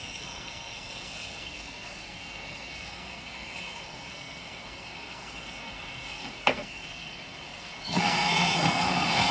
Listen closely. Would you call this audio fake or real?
fake